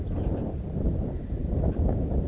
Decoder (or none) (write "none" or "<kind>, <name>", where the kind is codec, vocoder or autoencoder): none